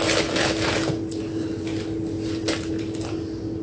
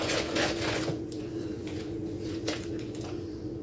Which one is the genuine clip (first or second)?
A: first